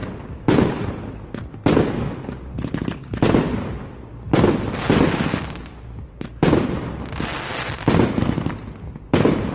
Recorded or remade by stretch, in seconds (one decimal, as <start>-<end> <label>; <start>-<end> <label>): 0.0-9.5 recorded